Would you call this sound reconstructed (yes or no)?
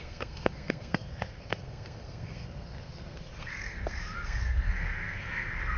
yes